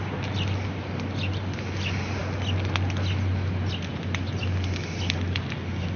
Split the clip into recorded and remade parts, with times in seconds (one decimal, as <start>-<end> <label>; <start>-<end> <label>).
0.0-6.0 recorded